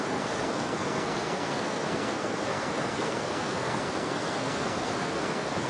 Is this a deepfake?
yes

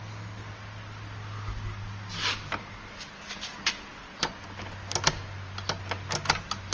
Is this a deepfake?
no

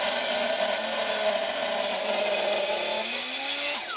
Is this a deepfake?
no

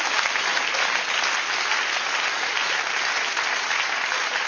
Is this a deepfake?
no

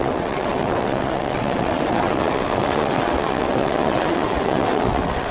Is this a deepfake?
yes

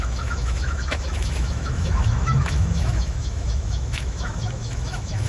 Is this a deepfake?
yes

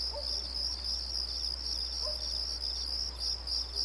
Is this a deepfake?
no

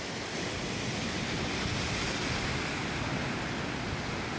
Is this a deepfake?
no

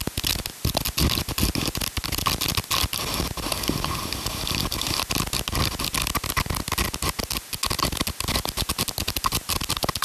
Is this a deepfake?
no